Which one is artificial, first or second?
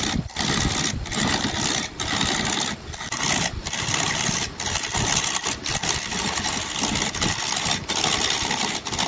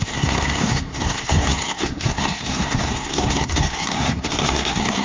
second